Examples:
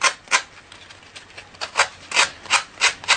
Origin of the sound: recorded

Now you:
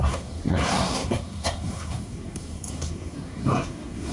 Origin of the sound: remade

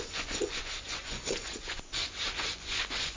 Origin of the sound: remade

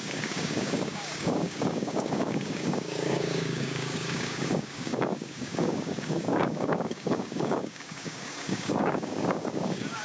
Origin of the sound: remade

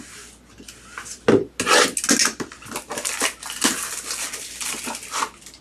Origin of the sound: recorded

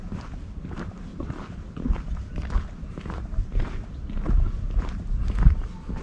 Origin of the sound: recorded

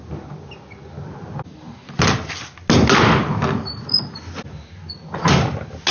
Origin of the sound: recorded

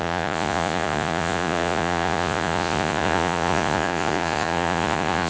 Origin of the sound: remade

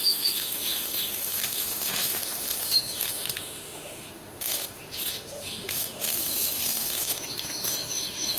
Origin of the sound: remade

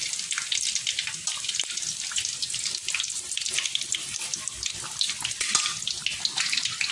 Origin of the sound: recorded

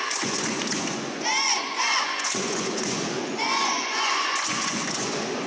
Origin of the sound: remade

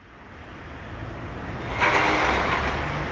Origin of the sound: recorded